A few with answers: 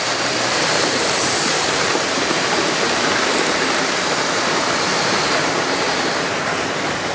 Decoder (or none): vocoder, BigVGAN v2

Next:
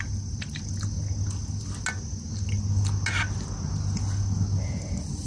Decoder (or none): none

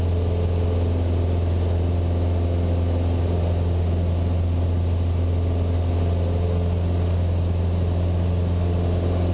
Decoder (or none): none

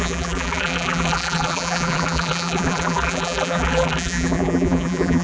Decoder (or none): vocoder, BigVGAN v2